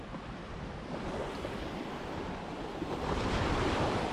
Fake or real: real